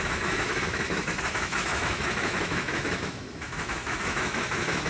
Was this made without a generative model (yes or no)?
no